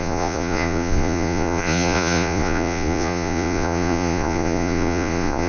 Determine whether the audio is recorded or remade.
remade